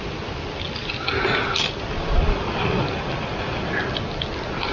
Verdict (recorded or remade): recorded